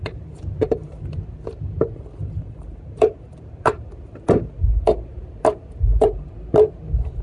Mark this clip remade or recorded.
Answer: remade